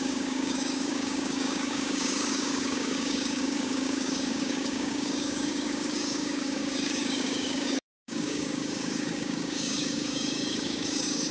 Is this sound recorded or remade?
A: remade